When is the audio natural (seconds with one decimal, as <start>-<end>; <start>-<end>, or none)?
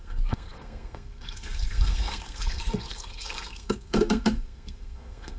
none